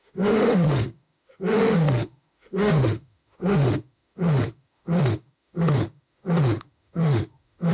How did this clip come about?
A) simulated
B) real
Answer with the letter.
A